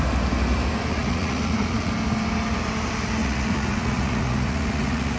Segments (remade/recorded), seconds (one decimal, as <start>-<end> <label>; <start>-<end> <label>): 0.0-0.9 recorded; 0.9-1.9 remade; 1.9-3.2 recorded; 3.2-5.2 remade

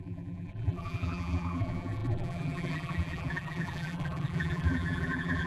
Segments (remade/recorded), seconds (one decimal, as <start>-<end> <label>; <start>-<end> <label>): 0.0-5.5 remade